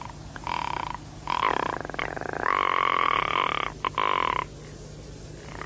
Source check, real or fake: real